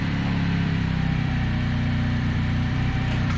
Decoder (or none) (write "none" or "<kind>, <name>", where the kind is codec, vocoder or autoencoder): vocoder, BigVGAN v2